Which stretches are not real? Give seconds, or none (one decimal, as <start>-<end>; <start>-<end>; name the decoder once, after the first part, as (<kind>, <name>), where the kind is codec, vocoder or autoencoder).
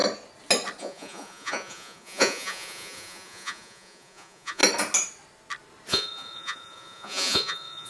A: 0.8-4.6 (vocoder, Vocos); 5.9-7.9